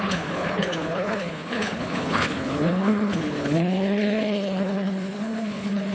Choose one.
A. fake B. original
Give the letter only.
A